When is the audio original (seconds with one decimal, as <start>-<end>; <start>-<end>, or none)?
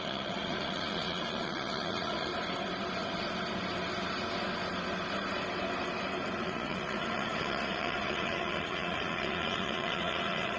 2.3-6.4